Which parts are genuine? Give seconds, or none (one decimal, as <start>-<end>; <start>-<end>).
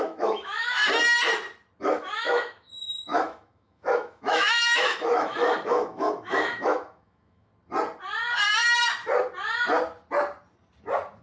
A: 0.8-1.8; 7.5-11.2